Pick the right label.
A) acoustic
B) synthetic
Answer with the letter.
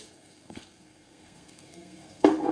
B